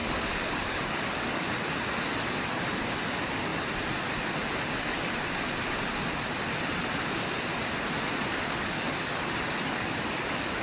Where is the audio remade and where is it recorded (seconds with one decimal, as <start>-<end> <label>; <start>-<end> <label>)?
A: 0.0-1.5 remade; 1.5-8.3 recorded; 8.3-10.6 remade